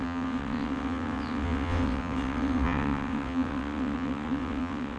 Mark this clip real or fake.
fake